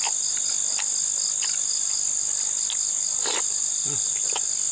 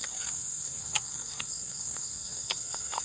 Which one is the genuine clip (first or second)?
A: first